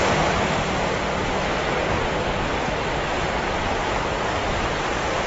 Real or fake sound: real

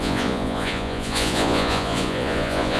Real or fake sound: fake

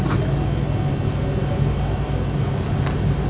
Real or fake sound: real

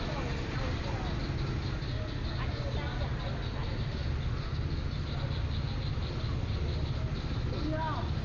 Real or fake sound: real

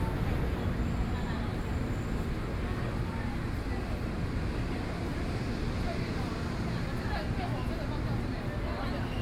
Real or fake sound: real